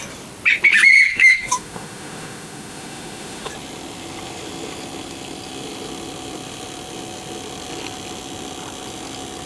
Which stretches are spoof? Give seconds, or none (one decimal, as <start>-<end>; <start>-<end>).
1.1-3.5